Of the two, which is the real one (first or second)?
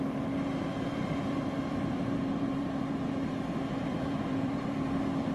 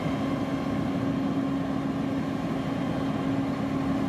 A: second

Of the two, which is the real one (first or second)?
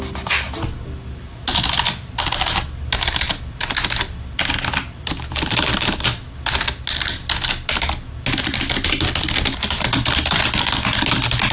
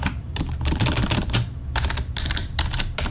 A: first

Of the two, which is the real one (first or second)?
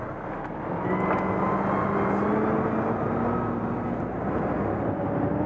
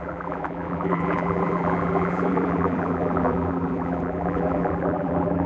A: first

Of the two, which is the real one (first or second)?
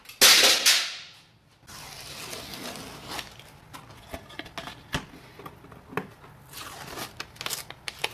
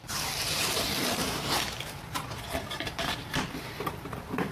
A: first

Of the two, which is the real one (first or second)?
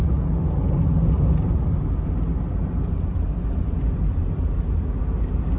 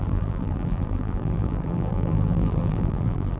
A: first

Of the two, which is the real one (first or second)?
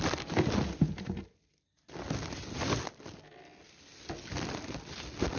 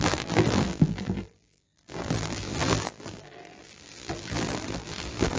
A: first